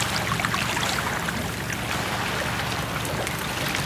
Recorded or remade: recorded